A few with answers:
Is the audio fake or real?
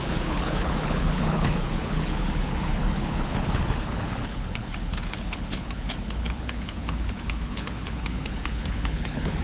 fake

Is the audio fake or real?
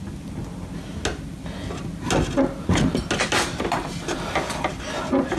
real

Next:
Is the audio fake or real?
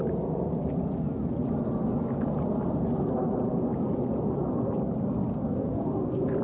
real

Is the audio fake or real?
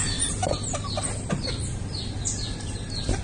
real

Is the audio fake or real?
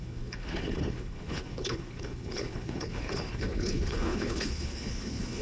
fake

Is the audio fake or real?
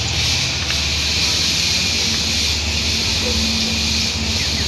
real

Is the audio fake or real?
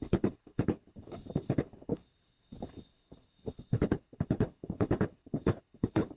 fake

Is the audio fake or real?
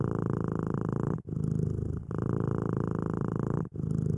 real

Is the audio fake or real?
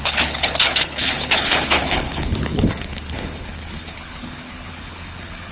fake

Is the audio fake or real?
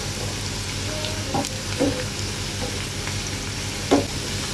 real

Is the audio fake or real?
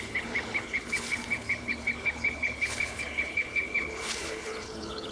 fake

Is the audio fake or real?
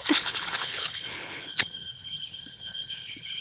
fake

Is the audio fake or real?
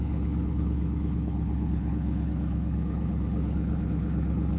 fake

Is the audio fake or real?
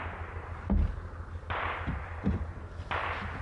real